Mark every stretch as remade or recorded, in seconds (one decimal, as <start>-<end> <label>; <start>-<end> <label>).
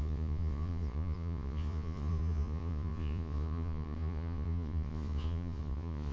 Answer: 0.0-6.1 remade